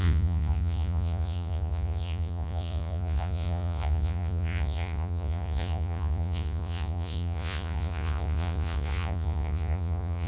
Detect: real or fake fake